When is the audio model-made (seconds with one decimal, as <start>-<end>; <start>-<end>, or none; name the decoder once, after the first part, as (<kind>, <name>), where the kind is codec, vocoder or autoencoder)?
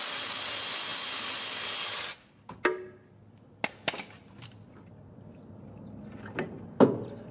none